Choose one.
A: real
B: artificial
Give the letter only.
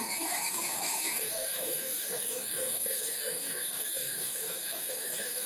B